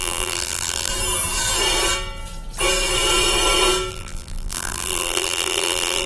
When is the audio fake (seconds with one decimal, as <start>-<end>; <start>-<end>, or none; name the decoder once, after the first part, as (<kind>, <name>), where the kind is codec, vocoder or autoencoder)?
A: 0.0-0.9 (vocoder, BigVGAN v2); 3.9-6.1